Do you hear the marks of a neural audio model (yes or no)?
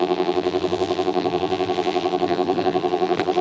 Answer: yes